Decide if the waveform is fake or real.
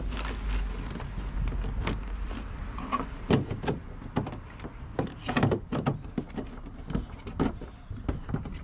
real